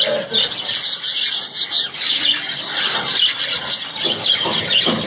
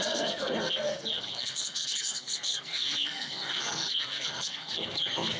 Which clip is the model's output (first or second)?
second